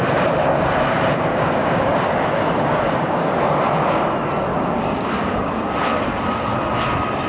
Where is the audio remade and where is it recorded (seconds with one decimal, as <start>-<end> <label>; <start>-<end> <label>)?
0.0-1.3 recorded; 1.3-3.4 remade; 3.4-4.5 recorded; 4.5-5.7 remade; 5.7-7.3 recorded